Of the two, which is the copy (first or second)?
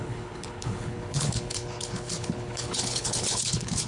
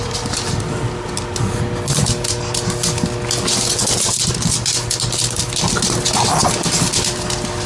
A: first